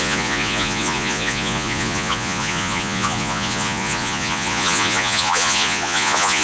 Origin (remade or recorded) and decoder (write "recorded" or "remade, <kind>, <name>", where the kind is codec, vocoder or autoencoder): remade, vocoder, Vocos